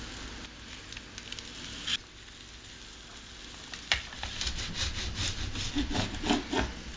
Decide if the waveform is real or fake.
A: real